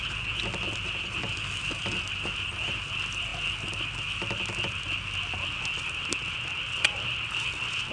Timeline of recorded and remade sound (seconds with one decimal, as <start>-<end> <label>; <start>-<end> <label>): 0.0-7.9 recorded